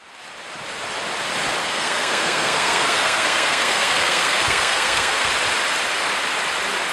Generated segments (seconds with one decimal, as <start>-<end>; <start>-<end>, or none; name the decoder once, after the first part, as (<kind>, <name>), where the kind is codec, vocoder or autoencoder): 1.6-5.3 (codec, SNAC)